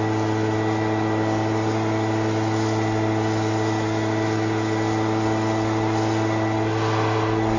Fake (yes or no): no